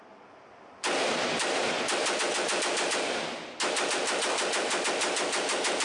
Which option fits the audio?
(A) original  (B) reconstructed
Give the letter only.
A